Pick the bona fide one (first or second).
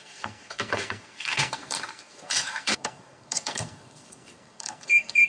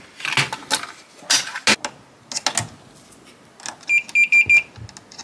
second